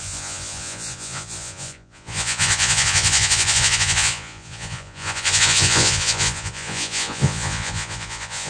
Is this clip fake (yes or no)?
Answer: yes